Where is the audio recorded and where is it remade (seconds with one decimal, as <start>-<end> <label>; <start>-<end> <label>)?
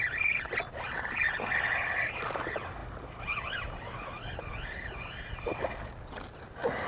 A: 0.0-6.9 recorded